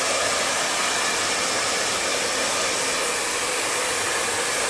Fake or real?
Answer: real